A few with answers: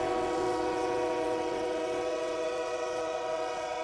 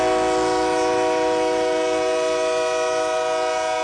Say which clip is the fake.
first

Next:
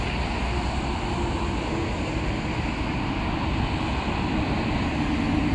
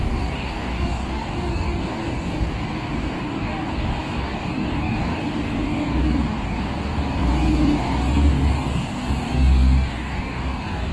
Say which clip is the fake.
second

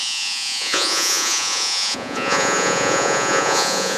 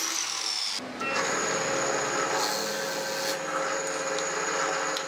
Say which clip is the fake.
first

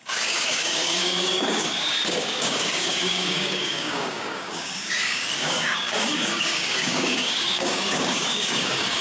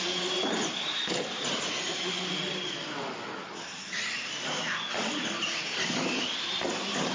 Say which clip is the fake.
first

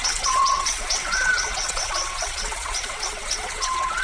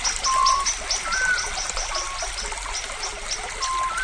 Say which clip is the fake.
first